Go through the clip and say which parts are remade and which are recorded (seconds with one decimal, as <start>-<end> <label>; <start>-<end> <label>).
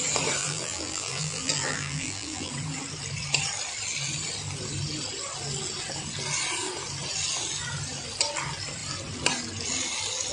0.0-0.4 recorded; 0.4-2.5 remade; 2.5-10.3 recorded